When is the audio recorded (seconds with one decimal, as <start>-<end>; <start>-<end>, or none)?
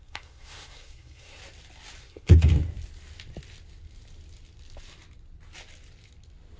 1.4-2.0; 2.5-6.6